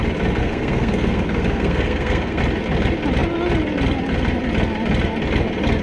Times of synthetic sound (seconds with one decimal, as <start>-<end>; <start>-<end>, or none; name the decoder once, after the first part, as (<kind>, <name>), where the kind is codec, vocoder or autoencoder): 0.4-2.4 (codec, SNAC)